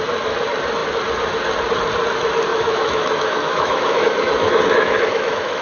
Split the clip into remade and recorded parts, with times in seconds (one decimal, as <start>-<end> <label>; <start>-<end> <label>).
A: 0.0-2.5 recorded; 2.5-5.6 remade